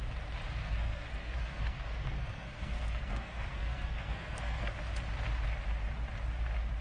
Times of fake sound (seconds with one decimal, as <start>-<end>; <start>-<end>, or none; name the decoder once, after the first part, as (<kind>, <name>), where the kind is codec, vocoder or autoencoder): 0.6-4.7 (codec, SNAC)